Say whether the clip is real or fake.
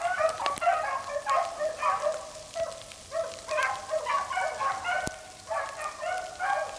real